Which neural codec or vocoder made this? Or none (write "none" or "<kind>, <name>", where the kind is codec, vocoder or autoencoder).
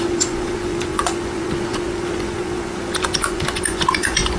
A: vocoder, Vocos